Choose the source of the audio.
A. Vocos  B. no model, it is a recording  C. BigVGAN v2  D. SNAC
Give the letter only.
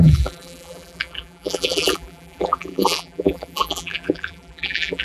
C